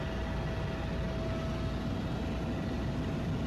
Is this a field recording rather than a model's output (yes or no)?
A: yes